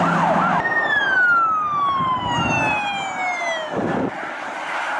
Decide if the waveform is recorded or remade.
recorded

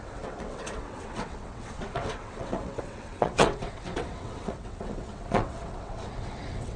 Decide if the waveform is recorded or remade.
remade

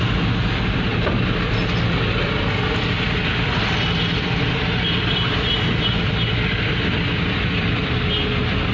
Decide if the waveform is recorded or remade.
recorded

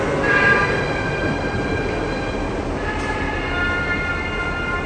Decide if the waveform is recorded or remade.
recorded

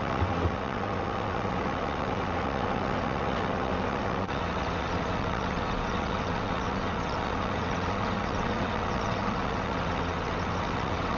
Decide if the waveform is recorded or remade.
remade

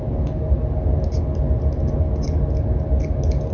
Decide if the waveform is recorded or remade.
recorded